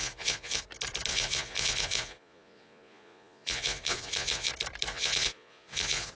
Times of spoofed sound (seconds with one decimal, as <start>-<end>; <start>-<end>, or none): 0.0-0.6; 1.1-4.5; 4.9-6.1